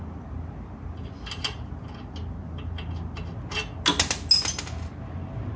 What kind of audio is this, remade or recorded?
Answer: recorded